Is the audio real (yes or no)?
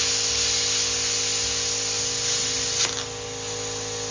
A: yes